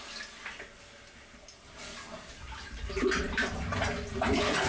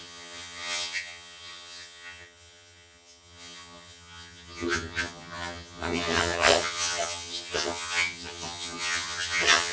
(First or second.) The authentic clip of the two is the first